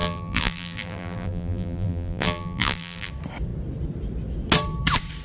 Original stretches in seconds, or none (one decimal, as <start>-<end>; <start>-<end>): 3.1-5.2